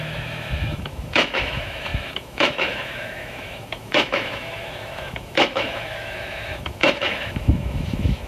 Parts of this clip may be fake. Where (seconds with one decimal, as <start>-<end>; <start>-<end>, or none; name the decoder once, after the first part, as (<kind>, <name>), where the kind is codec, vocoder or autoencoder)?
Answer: 0.0-8.3 (autoencoder, DAC-VAE)